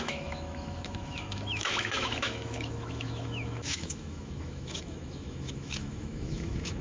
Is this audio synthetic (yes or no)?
yes